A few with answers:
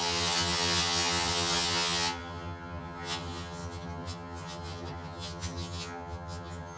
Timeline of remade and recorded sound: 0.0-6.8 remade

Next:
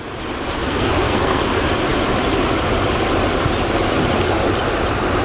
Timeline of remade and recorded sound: 0.0-0.6 recorded; 0.6-1.4 remade; 1.4-5.2 recorded

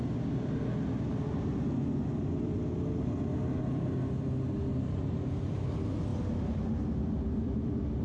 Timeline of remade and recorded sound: 0.0-8.0 recorded